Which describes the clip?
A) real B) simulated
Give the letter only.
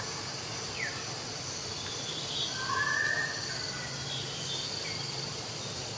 A